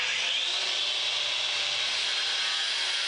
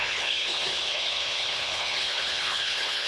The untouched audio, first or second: first